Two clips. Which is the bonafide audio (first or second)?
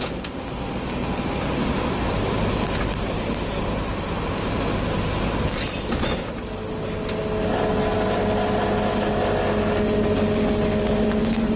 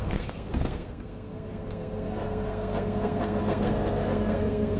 first